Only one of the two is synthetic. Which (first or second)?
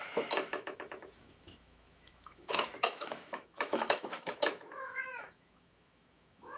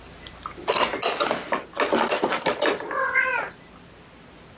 first